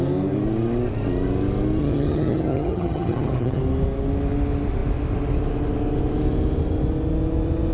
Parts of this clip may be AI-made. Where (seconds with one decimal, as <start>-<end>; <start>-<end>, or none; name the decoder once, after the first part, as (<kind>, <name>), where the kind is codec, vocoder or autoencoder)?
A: 1.8-3.6 (vocoder, HiFi-GAN)